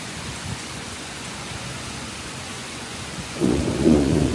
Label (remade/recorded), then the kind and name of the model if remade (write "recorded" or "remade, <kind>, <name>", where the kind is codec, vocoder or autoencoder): remade, vocoder, Vocos